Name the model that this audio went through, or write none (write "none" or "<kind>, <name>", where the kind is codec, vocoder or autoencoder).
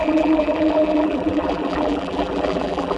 vocoder, BigVGAN v2